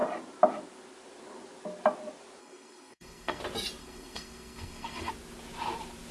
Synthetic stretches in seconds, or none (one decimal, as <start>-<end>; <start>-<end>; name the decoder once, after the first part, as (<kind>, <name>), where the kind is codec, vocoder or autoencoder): 2.4-3.4 (codec, SNAC); 3.8-5.1